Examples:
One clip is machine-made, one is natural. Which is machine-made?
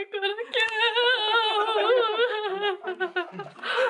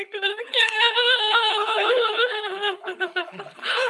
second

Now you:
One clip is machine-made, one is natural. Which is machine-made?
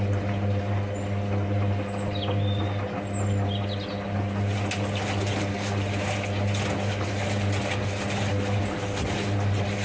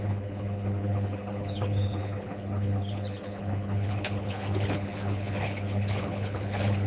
second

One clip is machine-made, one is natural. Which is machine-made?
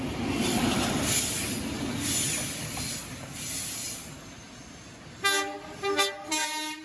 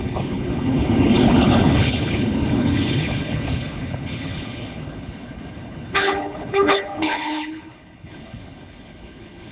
second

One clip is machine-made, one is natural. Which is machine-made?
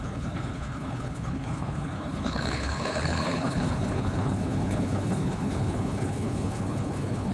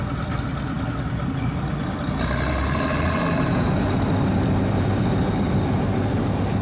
first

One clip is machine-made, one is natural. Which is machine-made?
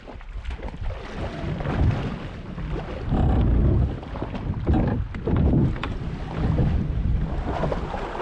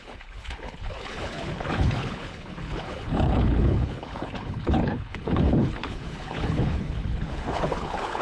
second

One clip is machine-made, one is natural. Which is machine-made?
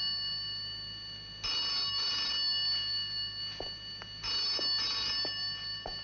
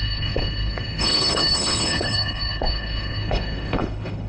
second